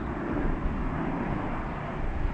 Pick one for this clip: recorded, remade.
recorded